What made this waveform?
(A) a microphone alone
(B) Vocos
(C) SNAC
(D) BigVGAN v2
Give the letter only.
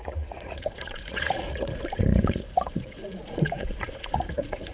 B